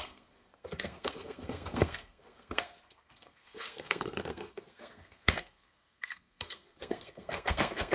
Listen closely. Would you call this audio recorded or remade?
remade